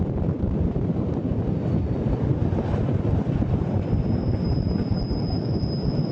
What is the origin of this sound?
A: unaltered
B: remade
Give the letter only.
A